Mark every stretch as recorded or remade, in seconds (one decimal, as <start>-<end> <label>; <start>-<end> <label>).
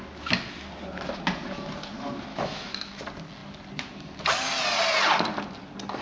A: 0.0-2.3 recorded; 2.3-3.0 remade; 3.0-6.0 recorded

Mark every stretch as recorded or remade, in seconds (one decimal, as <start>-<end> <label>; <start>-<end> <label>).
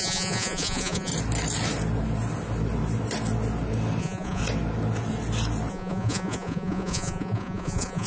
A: 0.0-1.1 remade; 1.1-4.0 recorded; 4.0-4.4 remade; 4.4-5.7 recorded; 5.7-8.1 remade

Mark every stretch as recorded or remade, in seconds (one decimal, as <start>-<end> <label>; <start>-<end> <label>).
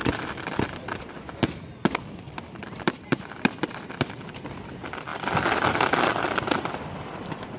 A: 0.0-7.6 recorded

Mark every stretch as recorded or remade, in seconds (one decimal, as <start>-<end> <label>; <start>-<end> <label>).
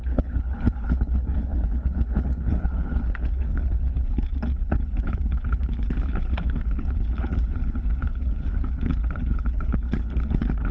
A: 0.0-10.7 remade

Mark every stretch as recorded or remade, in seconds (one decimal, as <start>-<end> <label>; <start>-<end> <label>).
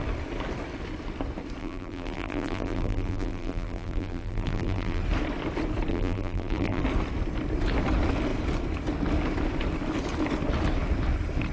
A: 0.0-1.6 recorded; 1.6-5.0 remade; 5.0-5.9 recorded; 5.9-6.8 remade; 6.8-11.5 recorded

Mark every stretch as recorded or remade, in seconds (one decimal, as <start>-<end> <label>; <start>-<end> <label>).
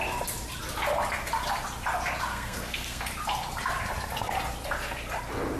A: 0.0-2.3 recorded; 2.3-3.0 remade; 3.0-5.6 recorded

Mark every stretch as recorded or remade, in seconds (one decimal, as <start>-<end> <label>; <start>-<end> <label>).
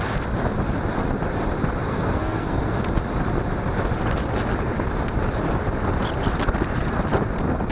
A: 0.0-1.8 recorded; 1.8-2.8 remade; 2.8-7.7 recorded